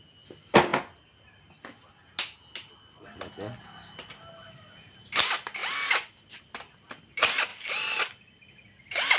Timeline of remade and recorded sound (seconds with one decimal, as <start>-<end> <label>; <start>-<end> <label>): 0.0-9.2 recorded